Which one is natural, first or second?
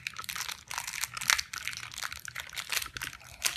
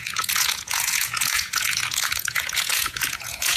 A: first